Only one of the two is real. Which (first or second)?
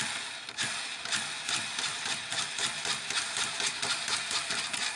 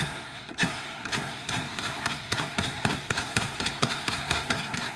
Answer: first